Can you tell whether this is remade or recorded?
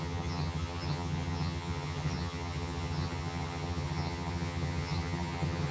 remade